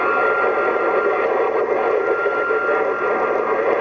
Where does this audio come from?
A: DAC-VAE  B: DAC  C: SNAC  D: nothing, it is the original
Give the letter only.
D